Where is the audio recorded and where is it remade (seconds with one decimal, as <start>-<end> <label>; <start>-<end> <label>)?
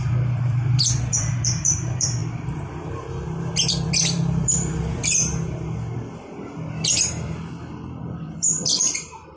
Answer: 0.0-2.2 remade; 2.2-3.7 recorded; 3.7-5.3 remade; 5.3-8.0 recorded; 8.0-9.4 remade